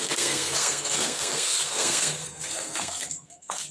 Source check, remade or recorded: remade